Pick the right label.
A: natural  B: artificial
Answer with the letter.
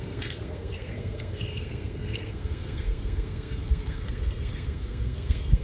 B